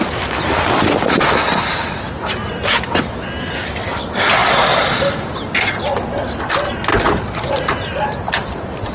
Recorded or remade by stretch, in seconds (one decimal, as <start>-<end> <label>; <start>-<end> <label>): 0.0-8.9 recorded